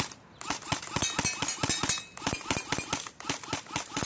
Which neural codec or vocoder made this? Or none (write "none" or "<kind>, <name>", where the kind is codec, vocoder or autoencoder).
none